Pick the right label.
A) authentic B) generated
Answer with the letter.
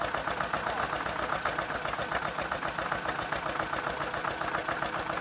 A